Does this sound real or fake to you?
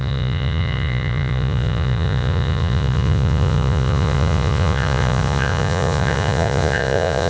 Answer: fake